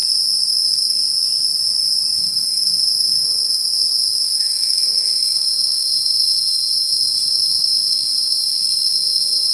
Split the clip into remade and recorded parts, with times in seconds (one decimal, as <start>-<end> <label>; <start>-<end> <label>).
0.0-0.5 recorded; 0.5-1.0 remade; 1.0-2.2 recorded; 2.2-9.5 remade